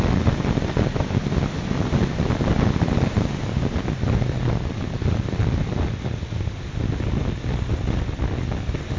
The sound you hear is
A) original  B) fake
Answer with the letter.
A